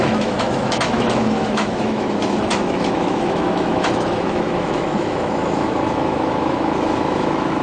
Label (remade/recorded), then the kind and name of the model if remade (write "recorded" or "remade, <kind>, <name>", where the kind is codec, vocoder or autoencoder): remade, autoencoder, DAC-VAE